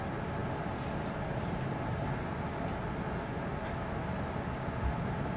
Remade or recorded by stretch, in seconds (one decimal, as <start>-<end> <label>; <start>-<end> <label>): 0.0-5.4 recorded